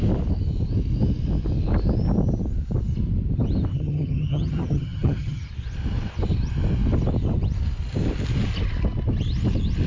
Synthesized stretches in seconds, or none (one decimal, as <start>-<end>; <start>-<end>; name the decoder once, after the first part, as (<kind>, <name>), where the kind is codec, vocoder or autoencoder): 3.7-5.5 (vocoder, HiFi-GAN)